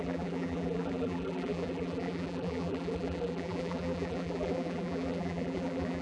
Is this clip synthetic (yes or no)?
yes